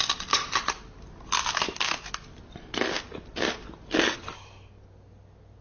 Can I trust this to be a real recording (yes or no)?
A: yes